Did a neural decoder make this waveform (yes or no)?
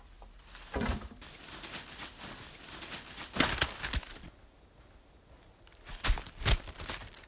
no